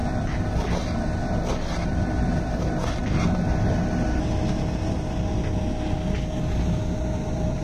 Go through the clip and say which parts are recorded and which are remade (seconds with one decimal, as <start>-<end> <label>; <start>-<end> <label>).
0.0-7.6 recorded